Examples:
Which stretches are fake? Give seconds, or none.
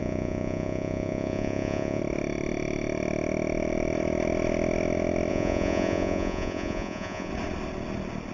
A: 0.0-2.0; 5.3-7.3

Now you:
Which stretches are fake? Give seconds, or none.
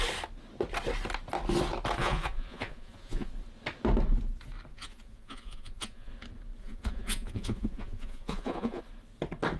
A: 2.0-3.3; 4.7-6.1; 6.6-8.8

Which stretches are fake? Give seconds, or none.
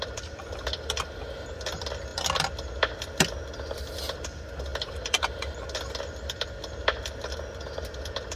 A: none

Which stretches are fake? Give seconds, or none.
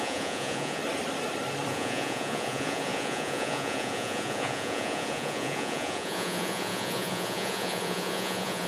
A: 0.0-0.8; 1.7-8.7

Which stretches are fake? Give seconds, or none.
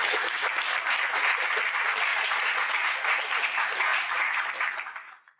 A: 2.1-3.2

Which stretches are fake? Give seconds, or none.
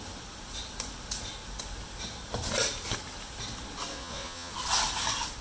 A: 3.9-4.5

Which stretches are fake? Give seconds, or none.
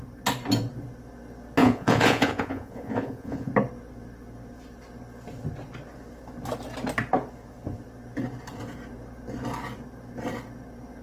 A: 1.6-3.5